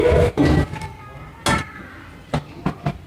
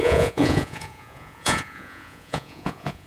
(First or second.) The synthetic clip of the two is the second